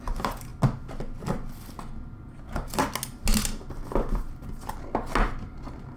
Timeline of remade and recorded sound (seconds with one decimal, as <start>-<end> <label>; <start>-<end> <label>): 0.0-6.0 recorded